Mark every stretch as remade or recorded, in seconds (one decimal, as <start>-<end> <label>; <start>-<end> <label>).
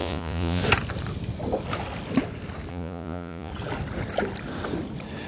0.0-0.6 remade; 0.6-2.7 recorded; 2.7-3.5 remade; 3.5-5.3 recorded